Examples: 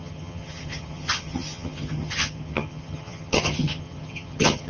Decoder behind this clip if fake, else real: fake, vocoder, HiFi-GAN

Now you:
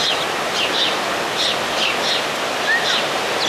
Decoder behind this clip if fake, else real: real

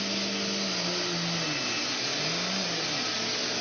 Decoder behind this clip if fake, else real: real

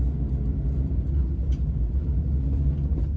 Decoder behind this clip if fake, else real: real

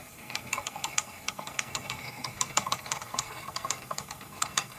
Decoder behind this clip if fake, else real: fake, codec, SNAC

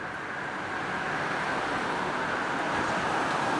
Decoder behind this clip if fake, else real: real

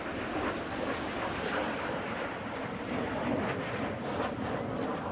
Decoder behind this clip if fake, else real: real